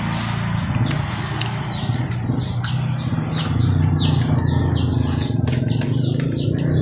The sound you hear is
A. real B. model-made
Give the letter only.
A